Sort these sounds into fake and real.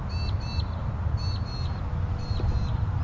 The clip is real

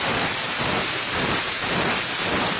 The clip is real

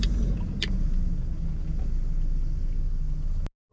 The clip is real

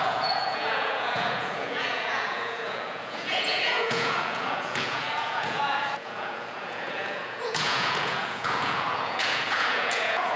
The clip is fake